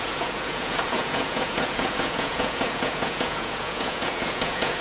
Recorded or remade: remade